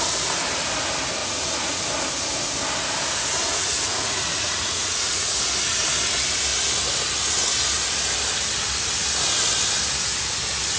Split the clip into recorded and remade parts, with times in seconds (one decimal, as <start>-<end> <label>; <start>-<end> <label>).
0.0-1.2 recorded; 1.2-1.8 remade; 1.8-3.4 recorded; 3.4-5.4 remade; 5.4-10.8 recorded